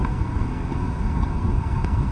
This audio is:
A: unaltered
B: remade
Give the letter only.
B